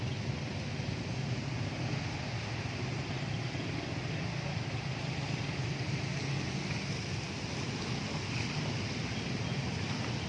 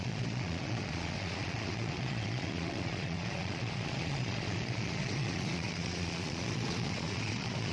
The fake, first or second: second